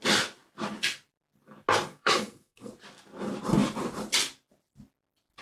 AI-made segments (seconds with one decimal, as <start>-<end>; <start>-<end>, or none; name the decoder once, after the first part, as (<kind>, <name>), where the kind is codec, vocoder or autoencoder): 1.9-2.7 (codec, SNAC)